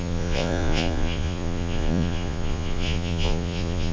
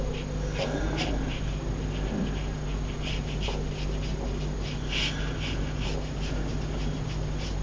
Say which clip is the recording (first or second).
second